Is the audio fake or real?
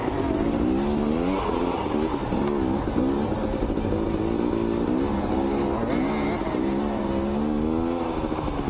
real